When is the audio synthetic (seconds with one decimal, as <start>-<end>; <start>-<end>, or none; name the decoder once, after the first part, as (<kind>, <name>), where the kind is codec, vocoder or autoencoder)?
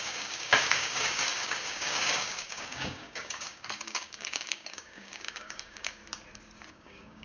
0.0-6.0 (codec, DAC); 6.7-7.2